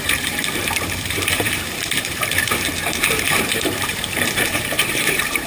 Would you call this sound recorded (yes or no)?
no